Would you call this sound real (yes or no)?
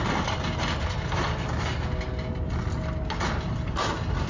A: yes